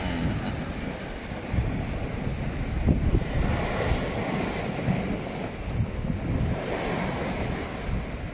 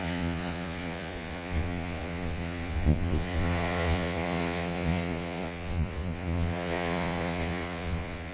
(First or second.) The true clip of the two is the first